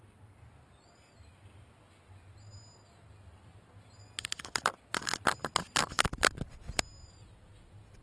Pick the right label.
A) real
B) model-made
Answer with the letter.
A